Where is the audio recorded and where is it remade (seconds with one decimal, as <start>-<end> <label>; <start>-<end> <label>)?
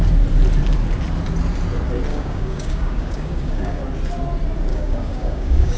0.0-2.1 recorded; 2.1-3.8 remade; 3.8-4.7 recorded; 4.7-5.8 remade